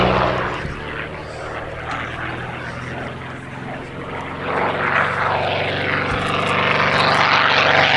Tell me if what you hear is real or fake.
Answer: real